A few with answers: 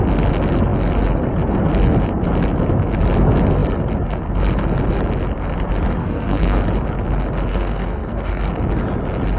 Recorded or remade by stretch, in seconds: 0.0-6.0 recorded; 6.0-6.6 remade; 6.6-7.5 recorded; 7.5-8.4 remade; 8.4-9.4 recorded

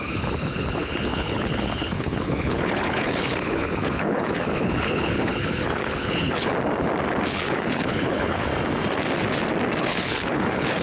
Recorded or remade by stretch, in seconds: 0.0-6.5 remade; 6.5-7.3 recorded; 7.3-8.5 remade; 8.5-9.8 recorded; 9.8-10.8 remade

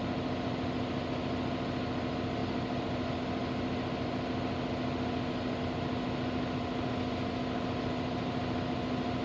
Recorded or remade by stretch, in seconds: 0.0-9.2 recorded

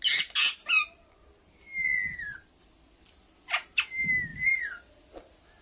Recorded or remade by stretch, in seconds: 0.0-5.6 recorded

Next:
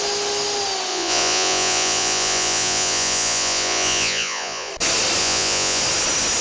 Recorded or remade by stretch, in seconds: 0.0-0.9 recorded; 0.9-4.7 remade; 4.7-5.2 recorded; 5.2-5.8 remade; 5.8-6.4 recorded

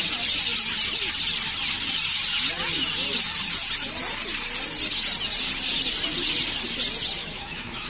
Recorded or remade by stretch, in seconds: 0.0-7.2 recorded; 7.2-7.9 remade

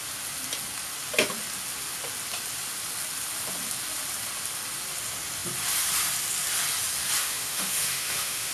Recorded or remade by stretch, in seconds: 0.0-7.2 recorded; 7.2-8.5 remade